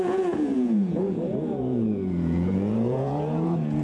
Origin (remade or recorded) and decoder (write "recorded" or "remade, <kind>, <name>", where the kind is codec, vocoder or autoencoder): remade, vocoder, Vocos